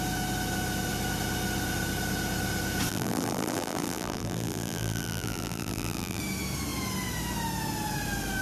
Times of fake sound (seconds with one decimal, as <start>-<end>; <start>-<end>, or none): 2.9-6.2